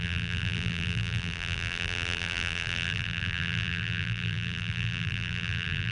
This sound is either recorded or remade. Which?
remade